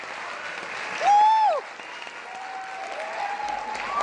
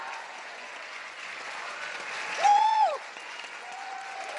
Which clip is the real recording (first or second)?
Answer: first